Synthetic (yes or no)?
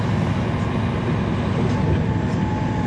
no